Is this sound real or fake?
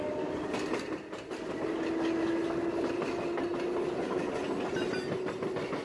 real